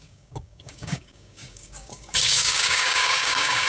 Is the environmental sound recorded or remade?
remade